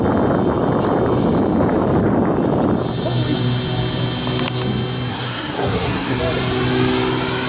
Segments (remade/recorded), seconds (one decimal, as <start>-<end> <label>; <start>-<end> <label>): 0.0-5.1 recorded; 5.1-6.2 remade; 6.2-7.5 recorded